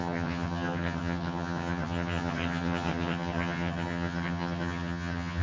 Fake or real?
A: fake